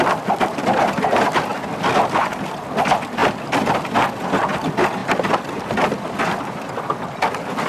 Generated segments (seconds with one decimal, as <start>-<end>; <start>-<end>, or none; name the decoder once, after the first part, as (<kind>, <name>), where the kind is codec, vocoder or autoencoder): none